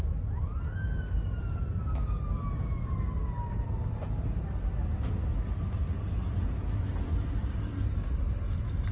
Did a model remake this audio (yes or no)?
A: no